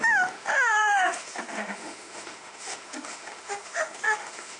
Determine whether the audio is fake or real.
fake